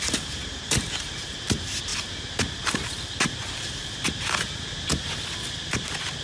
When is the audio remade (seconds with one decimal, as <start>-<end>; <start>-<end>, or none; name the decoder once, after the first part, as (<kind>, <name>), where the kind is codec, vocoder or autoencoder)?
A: none